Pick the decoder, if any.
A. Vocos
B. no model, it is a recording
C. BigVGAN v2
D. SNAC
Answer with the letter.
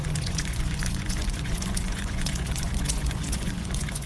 A